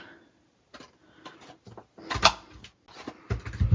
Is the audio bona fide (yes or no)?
yes